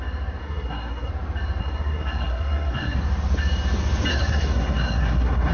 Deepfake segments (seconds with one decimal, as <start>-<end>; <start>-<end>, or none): 0.4-1.1; 1.6-3.0; 4.1-5.5

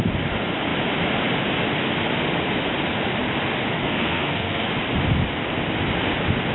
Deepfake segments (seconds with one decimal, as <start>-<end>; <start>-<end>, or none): 3.8-4.7

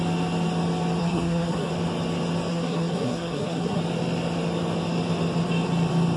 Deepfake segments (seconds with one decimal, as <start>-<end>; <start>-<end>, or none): 1.0-1.7; 2.5-3.8

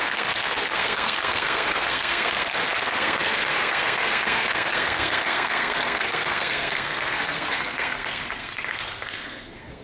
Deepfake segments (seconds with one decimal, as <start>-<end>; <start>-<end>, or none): 0.0-9.8

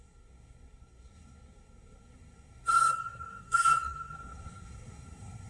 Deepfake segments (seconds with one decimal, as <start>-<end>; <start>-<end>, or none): 0.0-5.5

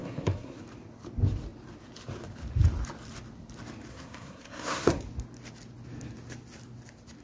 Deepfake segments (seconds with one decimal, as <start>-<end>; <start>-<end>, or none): 0.0-0.6; 3.9-5.0